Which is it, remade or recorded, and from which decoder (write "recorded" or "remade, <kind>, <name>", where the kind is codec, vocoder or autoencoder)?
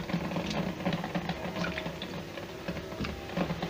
recorded